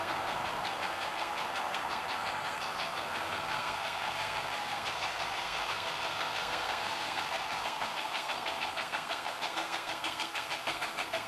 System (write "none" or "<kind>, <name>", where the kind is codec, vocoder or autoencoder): codec, SNAC